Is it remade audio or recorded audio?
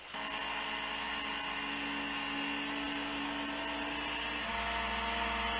recorded